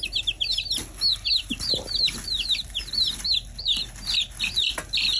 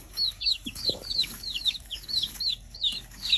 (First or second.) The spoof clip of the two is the second